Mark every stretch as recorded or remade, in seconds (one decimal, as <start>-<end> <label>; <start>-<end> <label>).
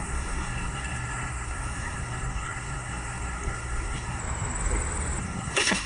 0.0-4.2 remade; 4.2-5.2 recorded; 5.2-5.9 remade